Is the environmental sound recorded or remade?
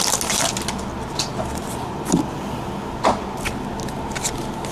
recorded